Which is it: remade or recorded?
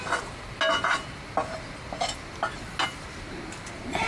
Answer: recorded